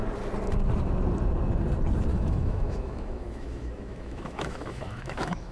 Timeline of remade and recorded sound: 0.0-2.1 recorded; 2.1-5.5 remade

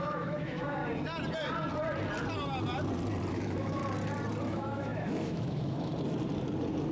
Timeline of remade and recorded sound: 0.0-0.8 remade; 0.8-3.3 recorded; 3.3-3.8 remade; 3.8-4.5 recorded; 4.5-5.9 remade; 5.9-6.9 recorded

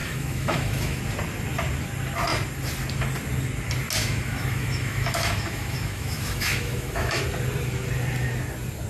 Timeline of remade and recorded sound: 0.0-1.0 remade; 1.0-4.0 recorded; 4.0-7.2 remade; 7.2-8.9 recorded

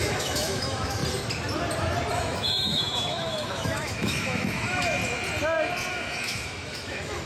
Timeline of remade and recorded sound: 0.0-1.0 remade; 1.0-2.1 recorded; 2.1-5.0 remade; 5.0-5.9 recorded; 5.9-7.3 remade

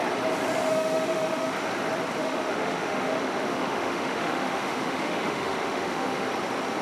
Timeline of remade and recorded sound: 0.0-0.7 recorded; 0.7-1.5 remade; 1.5-2.2 recorded; 2.2-6.3 remade; 6.3-6.8 recorded

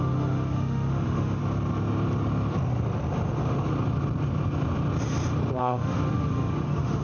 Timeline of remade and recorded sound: 0.0-1.4 remade; 1.4-5.6 recorded; 5.6-7.0 remade

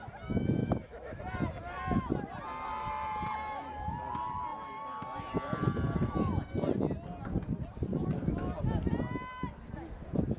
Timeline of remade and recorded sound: 0.0-0.6 recorded; 0.6-1.2 remade; 1.2-10.4 recorded